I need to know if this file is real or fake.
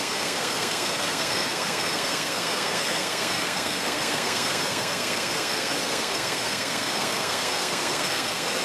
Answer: fake